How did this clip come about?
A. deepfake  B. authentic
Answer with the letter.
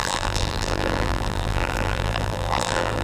A